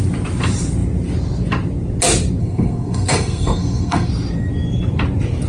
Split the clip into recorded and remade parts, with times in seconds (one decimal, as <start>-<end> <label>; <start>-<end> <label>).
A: 0.0-2.4 recorded; 2.4-4.1 remade; 4.1-5.5 recorded